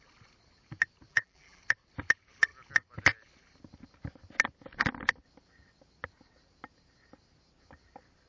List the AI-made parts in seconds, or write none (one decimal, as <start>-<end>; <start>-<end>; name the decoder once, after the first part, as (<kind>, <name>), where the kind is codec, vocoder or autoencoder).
1.1-1.6 (vocoder, BigVGAN v2)